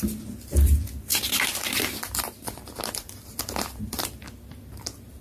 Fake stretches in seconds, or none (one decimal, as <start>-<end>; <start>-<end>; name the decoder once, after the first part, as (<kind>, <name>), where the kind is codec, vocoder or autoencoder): none